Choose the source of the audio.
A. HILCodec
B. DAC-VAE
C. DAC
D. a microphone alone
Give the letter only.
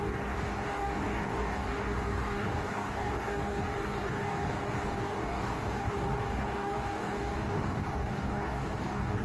C